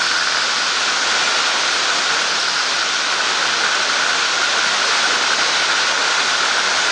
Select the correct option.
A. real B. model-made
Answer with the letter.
A